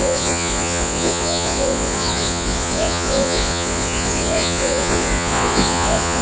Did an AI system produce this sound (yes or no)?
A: yes